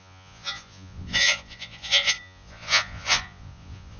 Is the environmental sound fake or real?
fake